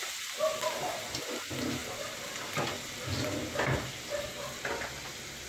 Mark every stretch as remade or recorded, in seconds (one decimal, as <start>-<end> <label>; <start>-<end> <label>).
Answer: 0.0-5.5 recorded